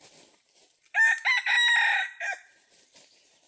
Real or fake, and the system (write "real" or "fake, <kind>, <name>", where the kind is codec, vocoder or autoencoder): real